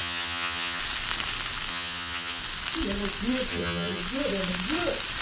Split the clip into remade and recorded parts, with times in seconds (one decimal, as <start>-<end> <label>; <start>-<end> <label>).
0.0-0.8 remade; 0.8-1.7 recorded; 1.7-2.4 remade; 2.4-3.5 recorded; 3.5-4.0 remade; 4.0-5.2 recorded